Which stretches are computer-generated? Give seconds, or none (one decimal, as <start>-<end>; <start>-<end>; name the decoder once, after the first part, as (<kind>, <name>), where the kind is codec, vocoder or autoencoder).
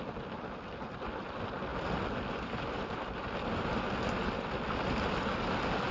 none